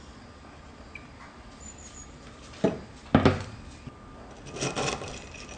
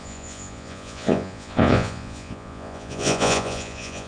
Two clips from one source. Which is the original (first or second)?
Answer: first